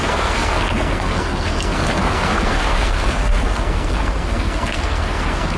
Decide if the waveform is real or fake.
fake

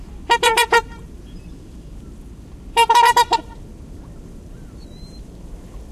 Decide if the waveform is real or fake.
fake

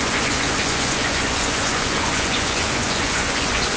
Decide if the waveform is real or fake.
fake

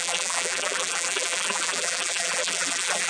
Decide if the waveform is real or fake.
fake